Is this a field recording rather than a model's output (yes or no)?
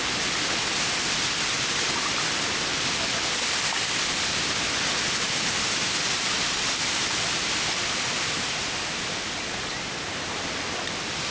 yes